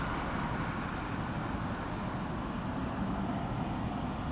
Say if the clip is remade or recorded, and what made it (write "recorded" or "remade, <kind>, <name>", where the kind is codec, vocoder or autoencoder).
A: recorded